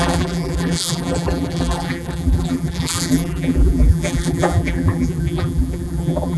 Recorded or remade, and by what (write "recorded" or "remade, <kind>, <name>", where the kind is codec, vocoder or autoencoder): remade, vocoder, BigVGAN v2